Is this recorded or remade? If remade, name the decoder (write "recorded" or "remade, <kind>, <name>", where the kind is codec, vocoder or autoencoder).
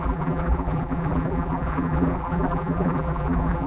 remade, vocoder, BigVGAN v2